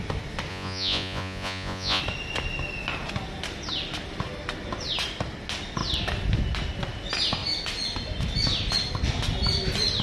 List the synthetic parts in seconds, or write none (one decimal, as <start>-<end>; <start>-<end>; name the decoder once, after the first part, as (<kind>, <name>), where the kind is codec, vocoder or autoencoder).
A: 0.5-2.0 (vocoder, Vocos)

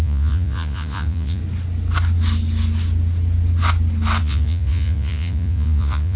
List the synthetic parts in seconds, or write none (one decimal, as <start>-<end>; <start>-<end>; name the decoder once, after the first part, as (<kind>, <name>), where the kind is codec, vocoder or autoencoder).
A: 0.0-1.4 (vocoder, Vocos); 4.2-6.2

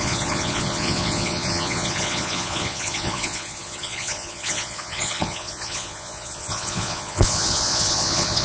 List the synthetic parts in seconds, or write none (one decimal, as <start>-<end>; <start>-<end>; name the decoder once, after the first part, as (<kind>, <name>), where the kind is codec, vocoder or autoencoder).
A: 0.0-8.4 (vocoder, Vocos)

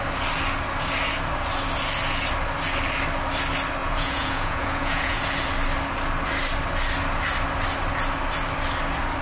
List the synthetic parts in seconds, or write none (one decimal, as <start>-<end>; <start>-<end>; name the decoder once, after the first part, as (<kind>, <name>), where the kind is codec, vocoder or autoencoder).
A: 3.8-5.2 (vocoder, Vocos)

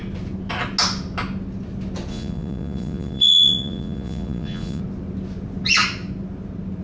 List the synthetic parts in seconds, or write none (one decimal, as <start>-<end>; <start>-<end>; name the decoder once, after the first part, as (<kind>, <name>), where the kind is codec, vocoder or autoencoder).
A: 2.1-4.8 (vocoder, Vocos)

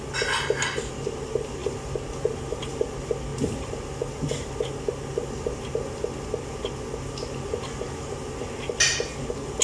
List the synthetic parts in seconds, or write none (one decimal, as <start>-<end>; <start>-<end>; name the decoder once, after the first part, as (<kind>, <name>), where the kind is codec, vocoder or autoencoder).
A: none

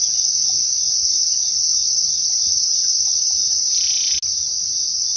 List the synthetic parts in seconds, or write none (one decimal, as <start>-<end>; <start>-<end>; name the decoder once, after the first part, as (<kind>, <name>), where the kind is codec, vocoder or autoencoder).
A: none

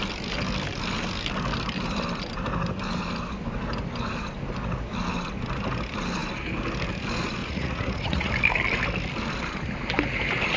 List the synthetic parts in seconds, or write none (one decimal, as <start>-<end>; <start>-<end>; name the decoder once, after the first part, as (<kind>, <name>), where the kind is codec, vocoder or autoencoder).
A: 7.4-8.3 (vocoder, Vocos)